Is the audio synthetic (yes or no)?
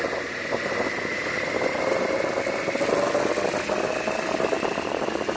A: no